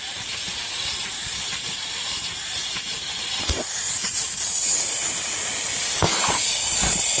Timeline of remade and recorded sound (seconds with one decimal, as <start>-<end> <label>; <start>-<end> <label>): 0.0-7.2 recorded